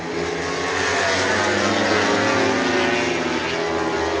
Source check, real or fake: real